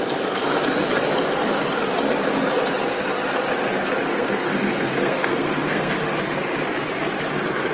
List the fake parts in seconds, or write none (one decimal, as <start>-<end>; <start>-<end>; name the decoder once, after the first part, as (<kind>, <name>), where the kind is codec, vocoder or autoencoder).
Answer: 4.1-5.9 (codec, SNAC)